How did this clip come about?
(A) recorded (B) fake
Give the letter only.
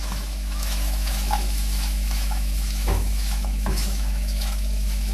B